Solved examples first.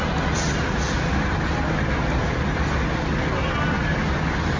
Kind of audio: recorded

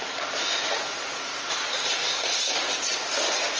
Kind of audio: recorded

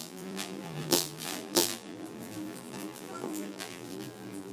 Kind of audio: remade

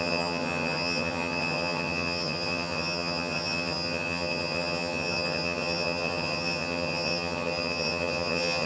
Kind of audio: remade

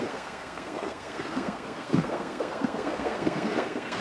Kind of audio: remade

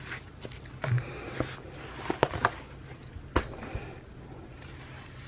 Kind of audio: recorded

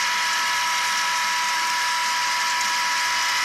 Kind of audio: recorded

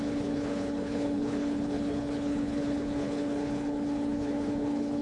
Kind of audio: remade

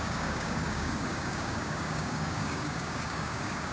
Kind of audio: remade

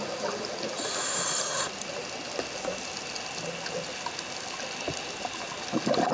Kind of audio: recorded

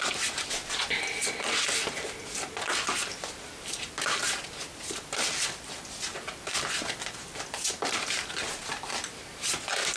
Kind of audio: recorded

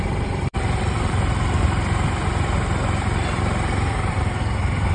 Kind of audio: remade